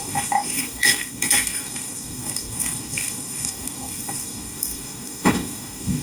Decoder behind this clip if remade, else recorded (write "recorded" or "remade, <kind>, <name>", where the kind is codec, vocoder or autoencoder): remade, codec, DAC